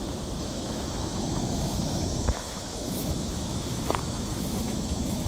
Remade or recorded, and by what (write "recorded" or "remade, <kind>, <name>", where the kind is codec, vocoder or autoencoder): remade, autoencoder, DAC-VAE